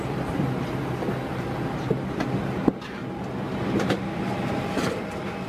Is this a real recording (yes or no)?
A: yes